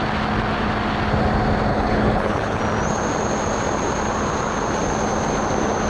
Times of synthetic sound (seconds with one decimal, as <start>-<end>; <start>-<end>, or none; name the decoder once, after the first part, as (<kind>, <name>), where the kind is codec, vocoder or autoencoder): 1.7-2.6 (codec, HILCodec)